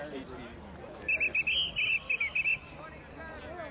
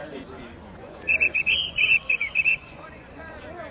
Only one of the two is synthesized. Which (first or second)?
second